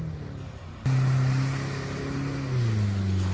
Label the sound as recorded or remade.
recorded